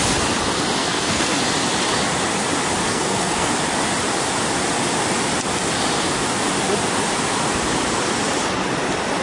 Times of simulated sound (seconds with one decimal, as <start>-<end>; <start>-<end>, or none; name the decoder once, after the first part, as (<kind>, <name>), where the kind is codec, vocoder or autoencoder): 0.8-1.4 (codec, SNAC); 2.9-3.5